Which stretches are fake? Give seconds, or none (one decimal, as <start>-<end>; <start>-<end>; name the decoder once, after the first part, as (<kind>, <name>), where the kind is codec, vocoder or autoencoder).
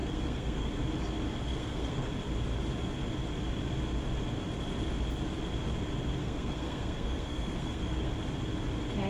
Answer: 0.0-0.7 (codec, SNAC); 1.5-2.1; 6.2-8.1